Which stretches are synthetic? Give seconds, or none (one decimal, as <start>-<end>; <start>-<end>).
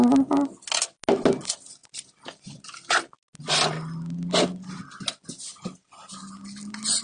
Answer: none